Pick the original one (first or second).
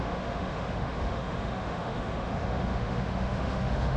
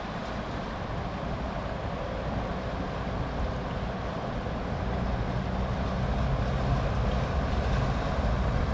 second